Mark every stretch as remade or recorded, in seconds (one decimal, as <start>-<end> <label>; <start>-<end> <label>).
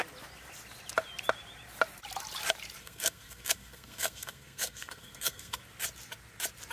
0.0-2.8 recorded; 2.8-5.6 remade; 5.6-6.7 recorded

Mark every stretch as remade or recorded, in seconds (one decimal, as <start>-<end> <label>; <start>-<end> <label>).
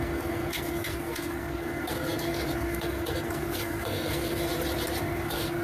0.0-4.5 remade; 4.5-5.0 recorded; 5.0-5.6 remade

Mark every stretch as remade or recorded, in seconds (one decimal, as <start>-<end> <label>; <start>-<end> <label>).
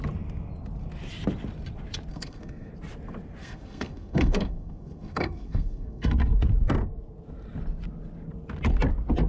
0.0-2.1 recorded; 2.1-2.7 remade; 2.7-3.4 recorded; 3.4-6.1 remade; 6.1-9.3 recorded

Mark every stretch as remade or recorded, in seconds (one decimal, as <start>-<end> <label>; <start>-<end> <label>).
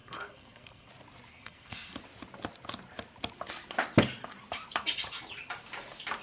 0.0-0.9 remade; 0.9-1.3 recorded; 1.3-1.9 remade; 1.9-6.2 recorded